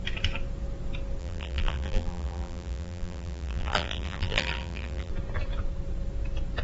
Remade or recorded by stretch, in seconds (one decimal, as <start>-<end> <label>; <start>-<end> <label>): 0.0-1.2 recorded; 1.2-5.1 remade; 5.1-6.6 recorded